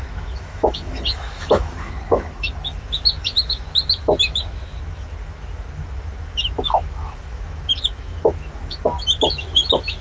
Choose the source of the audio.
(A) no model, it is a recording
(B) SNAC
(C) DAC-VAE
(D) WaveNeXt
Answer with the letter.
C